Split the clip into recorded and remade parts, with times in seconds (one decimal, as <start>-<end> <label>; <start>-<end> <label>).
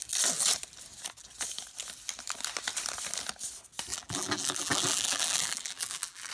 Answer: 0.0-3.9 recorded; 3.9-6.3 remade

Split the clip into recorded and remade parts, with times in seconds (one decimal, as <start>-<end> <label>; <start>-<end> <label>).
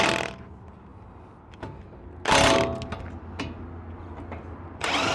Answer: 0.0-5.1 recorded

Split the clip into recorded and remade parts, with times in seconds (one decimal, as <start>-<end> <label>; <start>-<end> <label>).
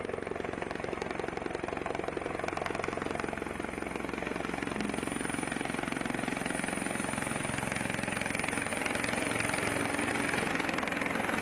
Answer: 0.0-8.7 recorded; 8.7-10.1 remade; 10.1-11.4 recorded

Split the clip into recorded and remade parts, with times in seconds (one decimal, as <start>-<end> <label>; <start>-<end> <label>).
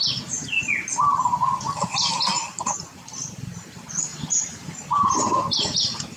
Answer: 0.0-2.4 recorded; 2.4-3.1 remade; 3.1-4.1 recorded; 4.1-5.1 remade; 5.1-6.2 recorded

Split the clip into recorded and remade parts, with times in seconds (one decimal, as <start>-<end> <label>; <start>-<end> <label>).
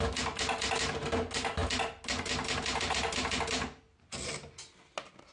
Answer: 0.0-5.3 recorded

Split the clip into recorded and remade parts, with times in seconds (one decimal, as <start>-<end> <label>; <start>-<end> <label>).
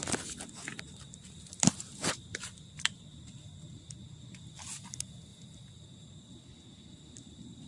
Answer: 0.0-0.7 recorded; 0.7-3.0 remade; 3.0-5.3 recorded; 5.3-6.4 remade; 6.4-7.7 recorded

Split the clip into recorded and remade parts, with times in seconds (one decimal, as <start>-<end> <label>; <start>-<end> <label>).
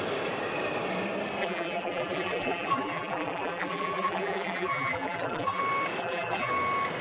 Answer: 0.0-1.4 recorded; 1.4-5.6 remade; 5.6-6.0 recorded; 6.0-6.5 remade; 6.5-7.0 recorded